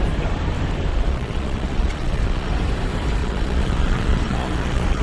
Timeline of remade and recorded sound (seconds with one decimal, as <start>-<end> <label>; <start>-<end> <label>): 0.0-0.9 recorded; 0.9-2.5 remade; 2.5-3.2 recorded; 3.2-5.0 remade